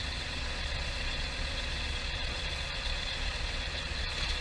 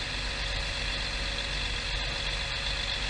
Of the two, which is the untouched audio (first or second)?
second